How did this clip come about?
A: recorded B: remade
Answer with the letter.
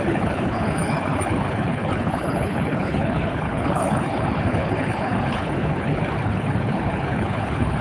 B